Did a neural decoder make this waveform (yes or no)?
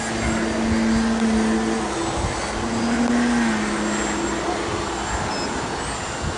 no